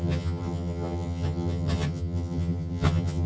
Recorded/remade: remade